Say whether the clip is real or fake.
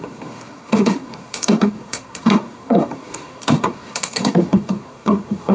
fake